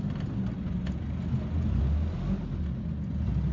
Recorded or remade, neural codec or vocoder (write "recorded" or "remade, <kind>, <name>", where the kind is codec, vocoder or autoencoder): recorded